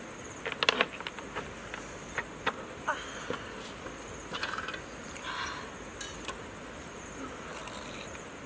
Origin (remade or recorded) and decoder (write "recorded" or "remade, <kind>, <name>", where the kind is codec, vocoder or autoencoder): recorded